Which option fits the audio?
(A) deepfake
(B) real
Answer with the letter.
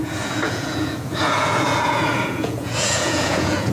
A